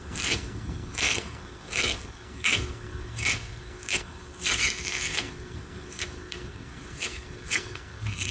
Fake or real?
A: fake